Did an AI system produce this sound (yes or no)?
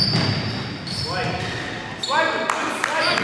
no